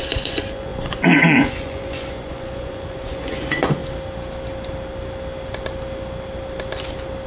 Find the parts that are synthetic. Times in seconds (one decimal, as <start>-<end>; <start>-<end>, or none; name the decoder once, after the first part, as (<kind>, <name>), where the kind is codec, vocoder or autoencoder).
0.0-3.8 (vocoder, Vocos)